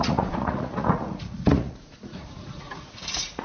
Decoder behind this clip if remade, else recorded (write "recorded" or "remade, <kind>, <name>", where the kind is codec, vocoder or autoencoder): remade, vocoder, Vocos